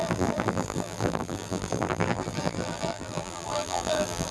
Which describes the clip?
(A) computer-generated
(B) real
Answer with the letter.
A